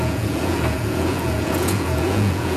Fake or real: fake